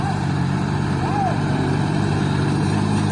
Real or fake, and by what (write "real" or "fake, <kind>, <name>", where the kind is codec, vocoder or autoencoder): fake, vocoder, BigVGAN v2